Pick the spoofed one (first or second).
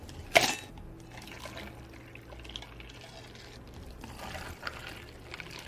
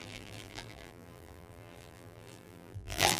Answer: second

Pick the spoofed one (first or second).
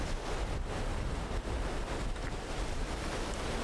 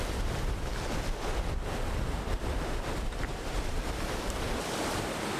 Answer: second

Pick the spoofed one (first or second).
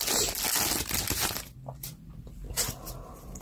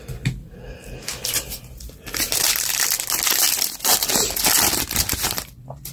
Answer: second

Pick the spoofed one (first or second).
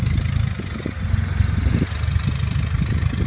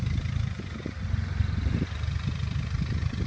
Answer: second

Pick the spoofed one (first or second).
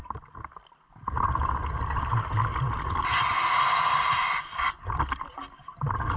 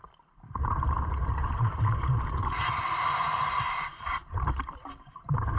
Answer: second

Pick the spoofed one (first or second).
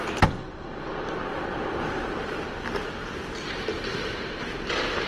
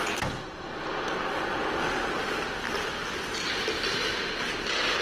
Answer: first